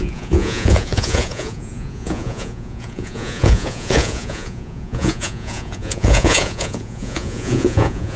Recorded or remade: remade